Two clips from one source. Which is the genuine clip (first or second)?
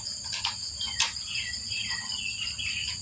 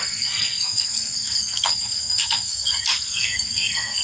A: first